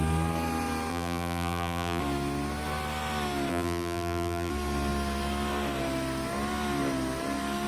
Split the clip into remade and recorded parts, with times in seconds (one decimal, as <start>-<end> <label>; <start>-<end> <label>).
0.0-0.9 recorded; 0.9-2.0 remade; 2.0-3.5 recorded; 3.5-4.5 remade; 4.5-7.7 recorded